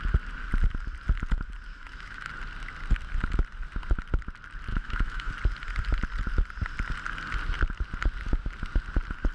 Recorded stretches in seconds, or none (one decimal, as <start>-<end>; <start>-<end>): 0.0-1.7; 2.3-4.7; 5.3-9.3